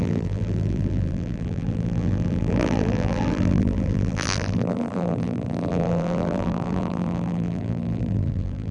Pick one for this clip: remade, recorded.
remade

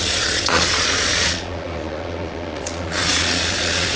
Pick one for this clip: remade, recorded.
remade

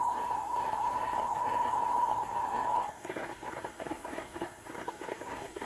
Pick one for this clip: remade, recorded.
remade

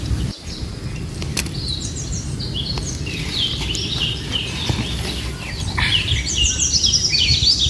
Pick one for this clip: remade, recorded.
remade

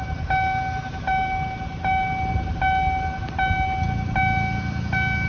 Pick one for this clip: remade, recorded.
recorded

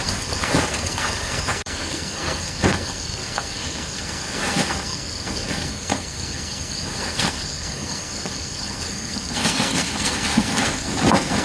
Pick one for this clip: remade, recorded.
remade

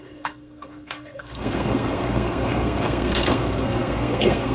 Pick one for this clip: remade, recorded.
remade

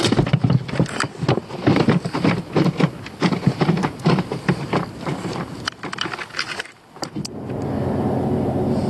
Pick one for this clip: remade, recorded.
recorded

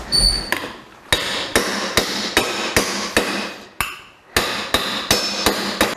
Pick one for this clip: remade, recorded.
recorded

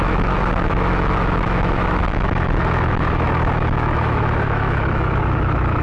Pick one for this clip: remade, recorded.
remade